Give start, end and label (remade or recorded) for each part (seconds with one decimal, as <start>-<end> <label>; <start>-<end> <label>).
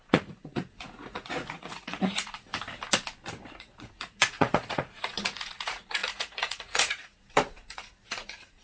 0.0-2.5 remade; 2.5-3.6 recorded; 3.6-8.6 remade